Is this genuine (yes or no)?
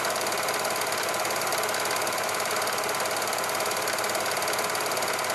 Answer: yes